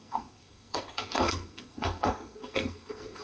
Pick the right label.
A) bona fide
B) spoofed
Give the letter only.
B